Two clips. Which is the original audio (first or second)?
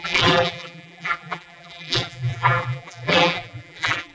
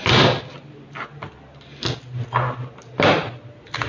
second